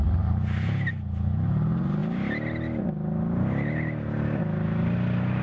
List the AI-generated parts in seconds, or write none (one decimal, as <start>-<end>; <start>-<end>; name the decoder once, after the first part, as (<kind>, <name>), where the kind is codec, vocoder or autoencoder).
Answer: none